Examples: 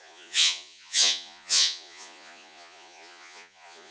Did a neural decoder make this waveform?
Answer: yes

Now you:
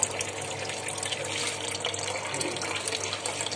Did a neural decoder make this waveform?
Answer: no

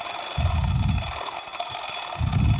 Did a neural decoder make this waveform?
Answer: no